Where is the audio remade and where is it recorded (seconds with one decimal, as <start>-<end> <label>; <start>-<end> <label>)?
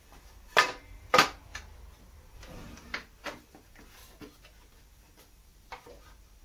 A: 0.0-1.5 remade; 1.5-2.3 recorded; 2.3-4.0 remade; 4.0-4.8 recorded; 4.8-5.5 remade; 5.5-6.4 recorded